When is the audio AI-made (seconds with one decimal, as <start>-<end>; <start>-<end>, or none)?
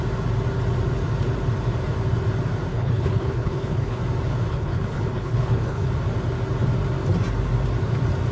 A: 2.7-4.0; 4.5-5.9